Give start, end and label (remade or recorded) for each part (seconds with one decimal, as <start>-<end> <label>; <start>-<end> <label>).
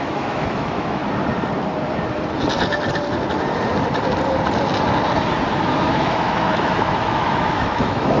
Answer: 0.0-1.0 remade; 1.0-5.9 recorded; 5.9-8.2 remade